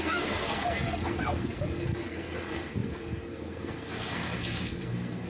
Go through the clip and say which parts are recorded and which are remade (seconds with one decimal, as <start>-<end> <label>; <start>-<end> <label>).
0.0-5.3 remade